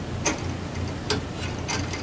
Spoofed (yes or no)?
no